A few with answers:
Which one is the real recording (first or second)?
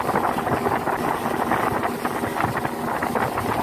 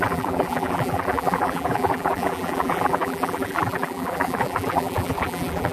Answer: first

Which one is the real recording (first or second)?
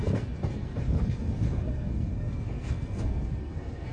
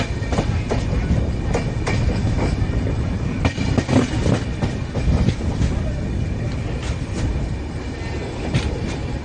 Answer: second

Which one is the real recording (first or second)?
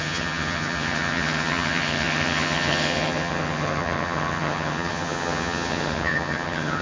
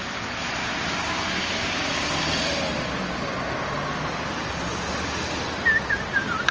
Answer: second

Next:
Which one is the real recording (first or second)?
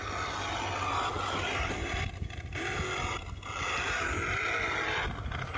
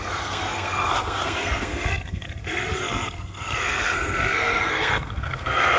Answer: first